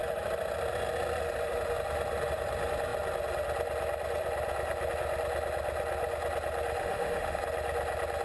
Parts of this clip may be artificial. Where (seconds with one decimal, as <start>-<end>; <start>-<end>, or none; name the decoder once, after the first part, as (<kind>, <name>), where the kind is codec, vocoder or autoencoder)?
6.8-7.4 (autoencoder, DAC-VAE)